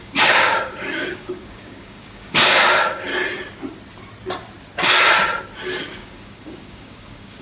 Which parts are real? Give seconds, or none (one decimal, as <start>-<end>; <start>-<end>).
3.1-5.8